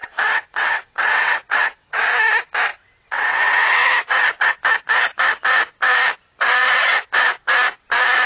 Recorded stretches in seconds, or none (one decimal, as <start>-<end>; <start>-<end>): 2.0-2.7; 3.9-6.6; 7.5-8.3